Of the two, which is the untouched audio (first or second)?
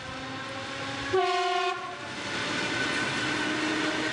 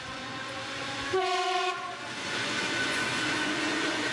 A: first